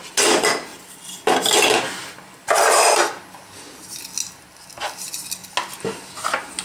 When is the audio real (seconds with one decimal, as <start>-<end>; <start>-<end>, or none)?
0.0-2.0; 3.0-6.6